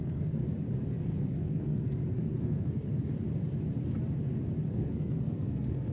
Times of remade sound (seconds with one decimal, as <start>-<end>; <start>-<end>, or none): 0.0-0.4; 1.0-3.1; 4.7-5.9